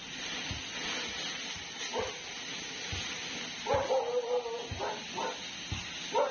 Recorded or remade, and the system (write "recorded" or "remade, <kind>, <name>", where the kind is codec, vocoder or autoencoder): recorded